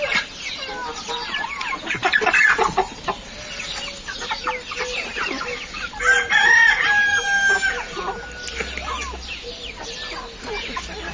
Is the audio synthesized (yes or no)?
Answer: no